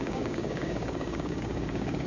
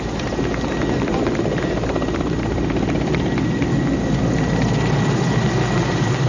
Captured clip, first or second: second